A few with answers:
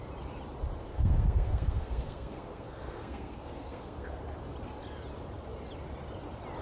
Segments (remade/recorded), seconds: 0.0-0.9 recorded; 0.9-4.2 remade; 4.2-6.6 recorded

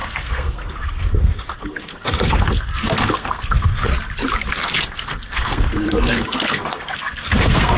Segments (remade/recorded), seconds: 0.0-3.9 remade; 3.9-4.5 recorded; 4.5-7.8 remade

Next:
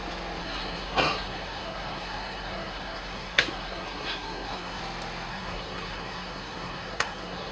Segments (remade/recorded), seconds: 0.0-0.4 recorded; 0.4-4.8 remade; 4.8-5.3 recorded; 5.3-7.5 remade

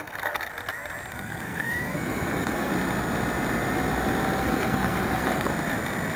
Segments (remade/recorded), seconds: 0.0-0.5 remade; 0.5-1.1 recorded; 1.1-2.7 remade; 2.7-4.4 recorded; 4.4-5.5 remade; 5.5-6.2 recorded

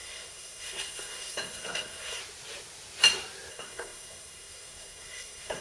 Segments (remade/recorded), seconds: 0.0-2.2 remade; 2.2-3.5 recorded; 3.5-5.6 remade

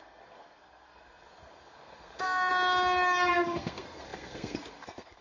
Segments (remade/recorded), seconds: 0.0-2.5 remade; 2.5-3.3 recorded; 3.3-5.2 remade

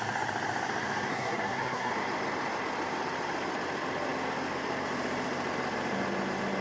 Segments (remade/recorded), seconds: 0.0-1.1 recorded; 1.1-1.9 remade; 1.9-6.6 recorded

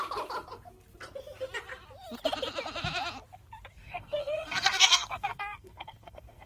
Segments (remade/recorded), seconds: 0.0-3.8 recorded; 3.8-6.5 remade